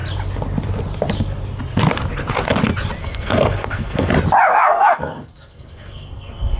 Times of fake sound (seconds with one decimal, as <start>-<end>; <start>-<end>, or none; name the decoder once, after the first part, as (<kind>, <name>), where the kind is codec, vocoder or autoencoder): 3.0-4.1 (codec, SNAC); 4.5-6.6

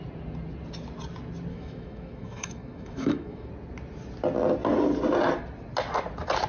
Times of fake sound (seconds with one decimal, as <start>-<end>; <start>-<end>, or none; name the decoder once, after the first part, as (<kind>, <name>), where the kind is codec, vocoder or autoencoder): 1.5-3.5 (autoencoder, DAC-VAE)

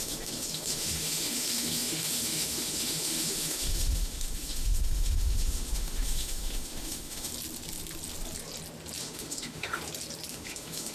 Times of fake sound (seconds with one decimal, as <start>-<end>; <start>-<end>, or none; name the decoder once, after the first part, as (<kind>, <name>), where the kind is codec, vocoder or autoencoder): 0.0-7.3 (autoencoder, DAC-VAE); 9.0-9.8; 10.3-10.9